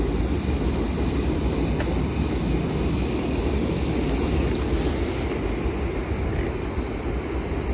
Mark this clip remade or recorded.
recorded